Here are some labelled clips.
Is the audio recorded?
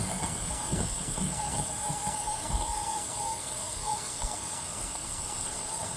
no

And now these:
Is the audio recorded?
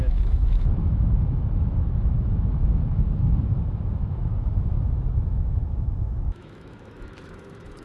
no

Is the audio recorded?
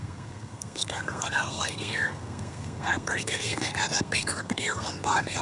no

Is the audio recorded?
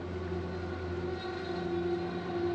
yes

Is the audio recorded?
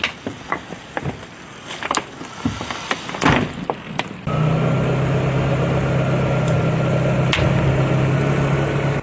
yes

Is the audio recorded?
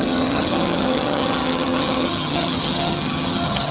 no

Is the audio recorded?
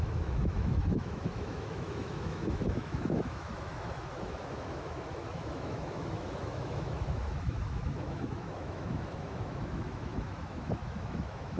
no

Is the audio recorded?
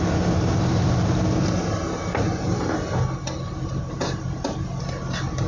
yes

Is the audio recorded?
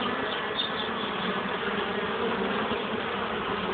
yes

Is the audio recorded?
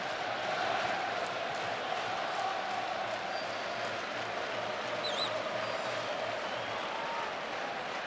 yes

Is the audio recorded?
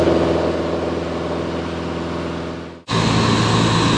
yes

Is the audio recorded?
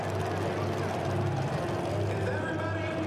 yes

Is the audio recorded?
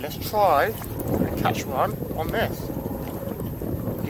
yes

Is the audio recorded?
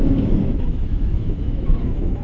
no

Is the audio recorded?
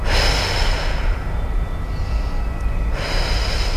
yes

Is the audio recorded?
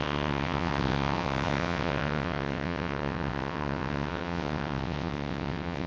no